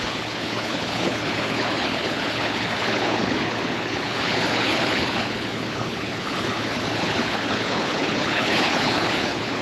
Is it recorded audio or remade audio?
remade